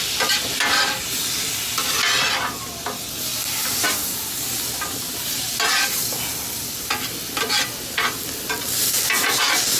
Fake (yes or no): no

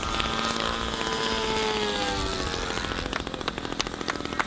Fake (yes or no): no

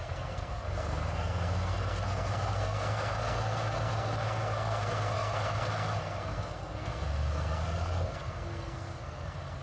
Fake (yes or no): yes